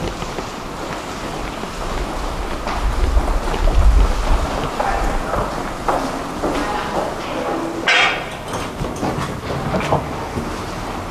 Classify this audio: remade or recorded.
recorded